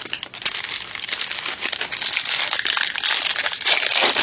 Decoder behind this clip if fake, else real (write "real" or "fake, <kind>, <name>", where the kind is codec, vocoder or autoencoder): real